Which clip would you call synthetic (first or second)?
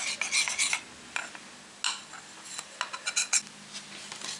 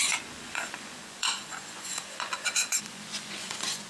second